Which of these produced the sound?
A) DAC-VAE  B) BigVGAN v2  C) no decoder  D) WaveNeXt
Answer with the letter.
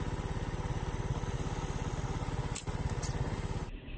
C